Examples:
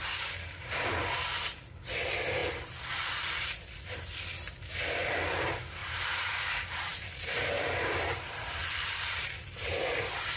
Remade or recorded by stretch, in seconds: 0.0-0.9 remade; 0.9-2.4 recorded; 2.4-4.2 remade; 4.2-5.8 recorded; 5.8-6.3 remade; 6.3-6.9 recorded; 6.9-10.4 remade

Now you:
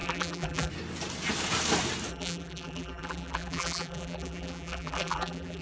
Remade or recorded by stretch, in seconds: 0.0-0.7 remade; 0.7-2.1 recorded; 2.1-5.6 remade